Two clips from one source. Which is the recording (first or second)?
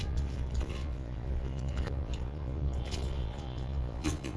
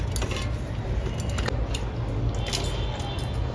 second